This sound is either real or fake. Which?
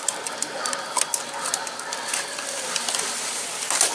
real